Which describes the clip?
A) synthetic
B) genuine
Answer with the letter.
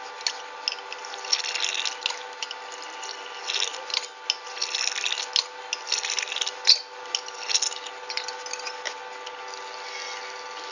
B